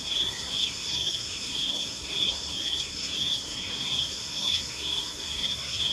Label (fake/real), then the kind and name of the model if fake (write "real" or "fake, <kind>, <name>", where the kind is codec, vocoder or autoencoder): fake, codec, SNAC